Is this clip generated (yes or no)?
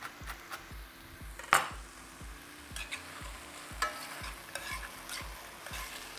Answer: no